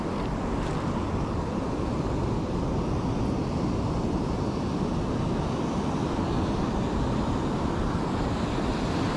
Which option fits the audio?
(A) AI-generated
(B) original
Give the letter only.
B